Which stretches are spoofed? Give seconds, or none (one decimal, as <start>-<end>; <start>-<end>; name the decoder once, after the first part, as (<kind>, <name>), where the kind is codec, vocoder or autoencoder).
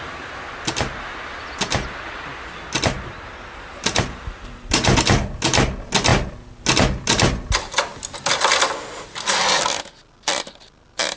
none